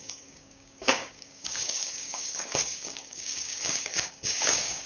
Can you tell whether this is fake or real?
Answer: fake